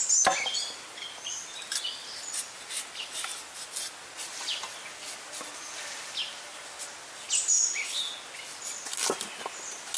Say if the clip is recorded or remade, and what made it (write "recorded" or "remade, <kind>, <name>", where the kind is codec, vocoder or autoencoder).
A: recorded